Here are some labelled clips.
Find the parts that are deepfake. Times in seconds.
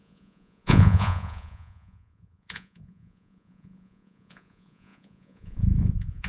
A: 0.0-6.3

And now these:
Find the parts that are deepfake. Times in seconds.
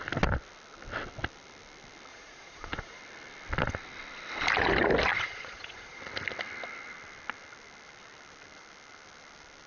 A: 2.1-3.0; 5.1-6.0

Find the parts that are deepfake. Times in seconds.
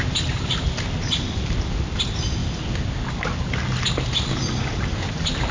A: none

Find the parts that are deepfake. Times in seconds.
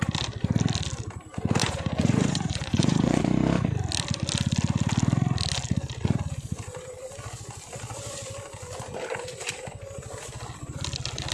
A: 1.6-3.2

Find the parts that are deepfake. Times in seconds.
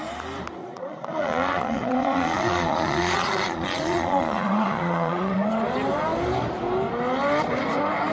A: 0.6-5.5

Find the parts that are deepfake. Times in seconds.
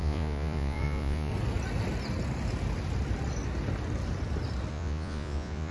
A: 0.0-1.3; 4.7-5.7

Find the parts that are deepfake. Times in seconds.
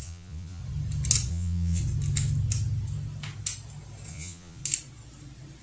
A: 0.0-0.6; 1.3-1.8; 4.1-4.6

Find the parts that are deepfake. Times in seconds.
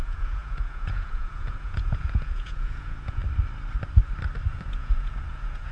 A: 0.0-3.2; 4.5-5.7